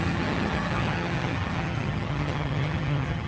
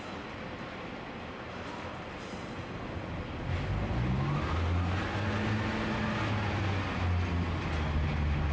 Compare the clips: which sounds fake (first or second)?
first